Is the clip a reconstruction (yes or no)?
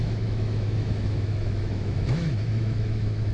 yes